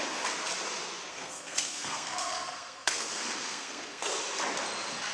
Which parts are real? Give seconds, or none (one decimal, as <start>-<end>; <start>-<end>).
0.0-1.1; 4.2-5.1